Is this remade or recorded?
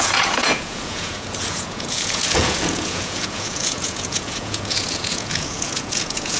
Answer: remade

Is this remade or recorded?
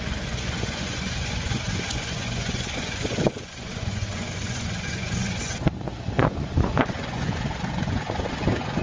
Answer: remade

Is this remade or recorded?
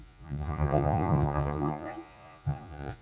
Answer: remade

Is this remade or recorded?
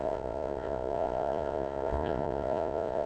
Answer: remade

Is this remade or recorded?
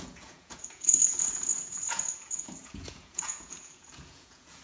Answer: remade